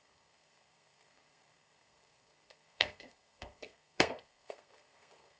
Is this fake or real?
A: fake